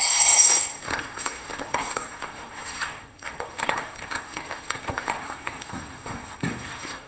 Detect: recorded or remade remade